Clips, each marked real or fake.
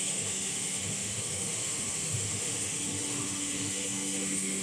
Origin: fake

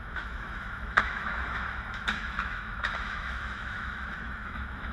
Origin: fake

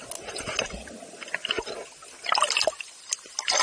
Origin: real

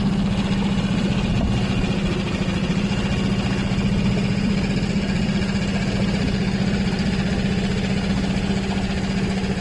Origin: real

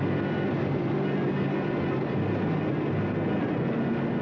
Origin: real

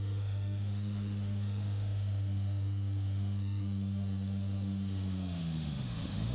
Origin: fake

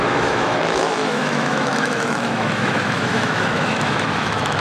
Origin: fake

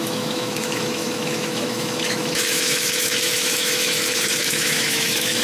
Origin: fake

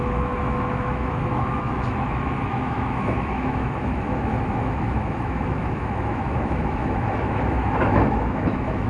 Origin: fake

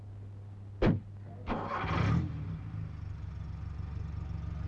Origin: real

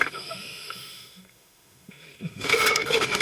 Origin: fake